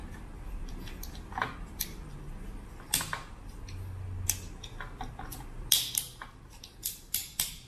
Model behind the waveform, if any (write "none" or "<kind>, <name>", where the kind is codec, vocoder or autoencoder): none